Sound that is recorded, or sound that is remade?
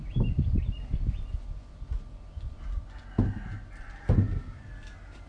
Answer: recorded